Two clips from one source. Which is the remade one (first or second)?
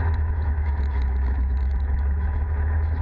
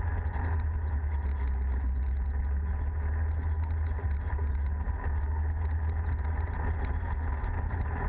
first